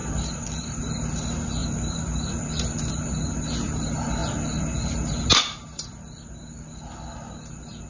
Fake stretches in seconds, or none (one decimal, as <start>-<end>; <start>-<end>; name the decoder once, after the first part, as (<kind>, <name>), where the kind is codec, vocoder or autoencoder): 0.0-0.8 (vocoder, BigVGAN v2); 1.6-2.5